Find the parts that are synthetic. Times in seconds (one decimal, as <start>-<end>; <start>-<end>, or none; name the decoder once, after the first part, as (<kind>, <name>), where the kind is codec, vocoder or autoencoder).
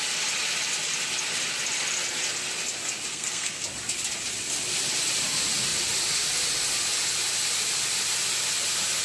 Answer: 3.1-3.6 (codec, SNAC)